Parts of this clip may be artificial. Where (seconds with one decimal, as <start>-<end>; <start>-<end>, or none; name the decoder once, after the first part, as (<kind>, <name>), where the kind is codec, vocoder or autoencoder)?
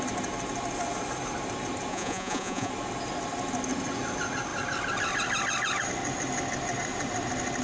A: 1.9-2.7 (vocoder, Vocos)